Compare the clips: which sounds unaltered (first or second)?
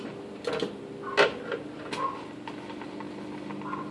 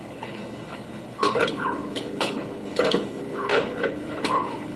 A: first